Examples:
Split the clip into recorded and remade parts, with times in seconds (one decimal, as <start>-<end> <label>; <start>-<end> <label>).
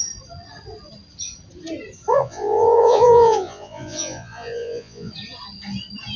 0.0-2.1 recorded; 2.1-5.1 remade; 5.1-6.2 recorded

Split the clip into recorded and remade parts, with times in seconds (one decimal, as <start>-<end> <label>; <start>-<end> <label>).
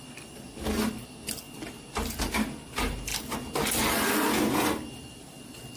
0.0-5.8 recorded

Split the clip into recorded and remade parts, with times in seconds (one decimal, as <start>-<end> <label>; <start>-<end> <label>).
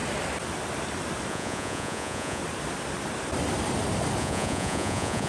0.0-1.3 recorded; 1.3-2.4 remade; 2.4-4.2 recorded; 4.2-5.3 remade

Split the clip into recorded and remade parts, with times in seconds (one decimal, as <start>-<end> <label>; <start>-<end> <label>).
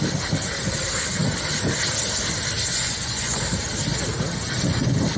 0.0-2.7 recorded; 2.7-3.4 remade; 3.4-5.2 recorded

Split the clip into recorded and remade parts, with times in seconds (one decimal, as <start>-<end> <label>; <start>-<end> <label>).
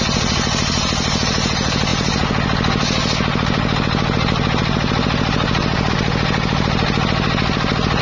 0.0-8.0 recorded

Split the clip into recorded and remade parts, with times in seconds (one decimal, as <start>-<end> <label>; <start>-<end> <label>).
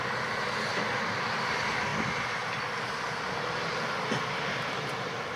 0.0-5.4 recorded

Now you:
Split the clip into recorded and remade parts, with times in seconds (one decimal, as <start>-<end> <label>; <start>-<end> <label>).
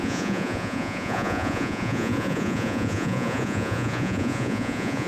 0.0-5.1 remade